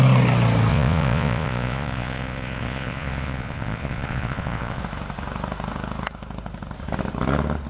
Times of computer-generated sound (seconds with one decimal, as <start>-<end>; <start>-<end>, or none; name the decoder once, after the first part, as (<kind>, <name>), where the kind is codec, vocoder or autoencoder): 0.7-4.8 (vocoder, Vocos)

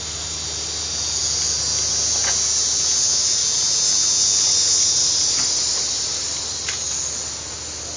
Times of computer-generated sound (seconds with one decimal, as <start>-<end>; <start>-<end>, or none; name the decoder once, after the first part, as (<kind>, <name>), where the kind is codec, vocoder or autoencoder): none

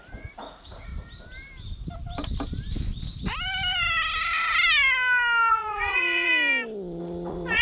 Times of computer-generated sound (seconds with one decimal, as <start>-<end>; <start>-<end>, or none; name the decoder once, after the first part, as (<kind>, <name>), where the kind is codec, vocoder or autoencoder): 0.0-0.9 (vocoder, Vocos); 5.5-6.3; 7.0-7.6

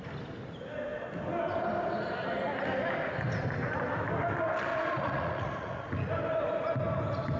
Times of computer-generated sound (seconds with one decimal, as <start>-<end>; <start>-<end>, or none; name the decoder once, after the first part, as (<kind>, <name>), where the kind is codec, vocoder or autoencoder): 4.7-6.1 (vocoder, Vocos)

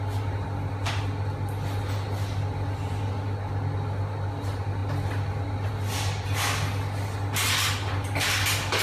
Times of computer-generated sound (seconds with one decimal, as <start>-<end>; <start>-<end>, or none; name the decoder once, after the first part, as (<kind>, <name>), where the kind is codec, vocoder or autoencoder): none

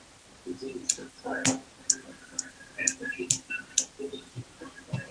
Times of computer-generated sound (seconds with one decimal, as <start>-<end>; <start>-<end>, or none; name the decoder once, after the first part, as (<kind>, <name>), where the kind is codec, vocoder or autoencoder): none